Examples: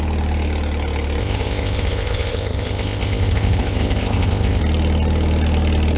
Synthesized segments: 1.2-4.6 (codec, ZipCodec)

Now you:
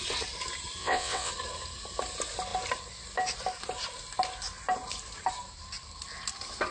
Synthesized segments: 0.8-1.3 (vocoder, WaveNeXt)

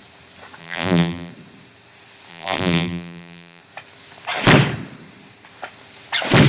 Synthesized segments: 0.6-1.3 (vocoder, BigVGAN v2); 2.3-3.6